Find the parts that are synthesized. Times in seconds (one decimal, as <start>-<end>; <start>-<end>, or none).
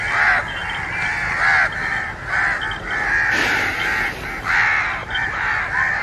5.0-5.5